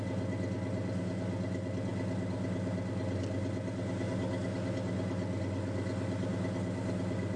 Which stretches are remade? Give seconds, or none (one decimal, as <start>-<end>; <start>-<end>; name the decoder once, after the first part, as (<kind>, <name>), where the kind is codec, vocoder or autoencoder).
none